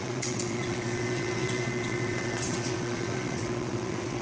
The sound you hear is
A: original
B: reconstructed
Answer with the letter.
B